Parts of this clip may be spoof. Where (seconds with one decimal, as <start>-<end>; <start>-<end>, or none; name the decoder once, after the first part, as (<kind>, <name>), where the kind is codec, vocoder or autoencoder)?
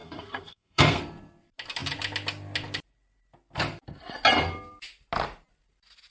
0.0-1.0 (codec, SNAC)